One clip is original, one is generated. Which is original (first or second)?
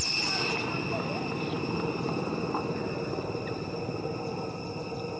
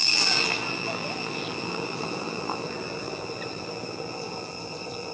first